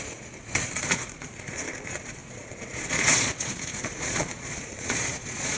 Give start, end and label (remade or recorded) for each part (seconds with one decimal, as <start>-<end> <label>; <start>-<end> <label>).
0.0-5.6 remade